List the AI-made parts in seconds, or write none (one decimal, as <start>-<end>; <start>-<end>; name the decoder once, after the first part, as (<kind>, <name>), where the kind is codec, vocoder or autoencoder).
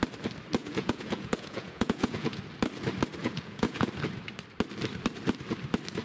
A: 0.6-2.4 (vocoder, Vocos); 3.2-3.9